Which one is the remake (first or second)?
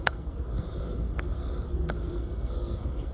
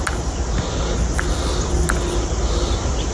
first